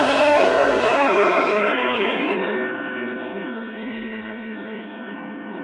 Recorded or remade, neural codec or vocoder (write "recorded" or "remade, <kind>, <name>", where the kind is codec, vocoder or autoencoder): remade, codec, SNAC